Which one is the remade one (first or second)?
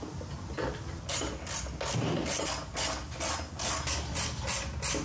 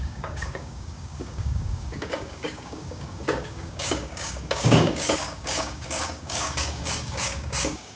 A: second